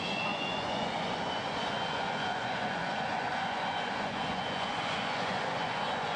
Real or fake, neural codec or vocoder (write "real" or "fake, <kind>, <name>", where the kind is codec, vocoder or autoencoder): fake, vocoder, Vocos